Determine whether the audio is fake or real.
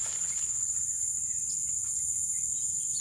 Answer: real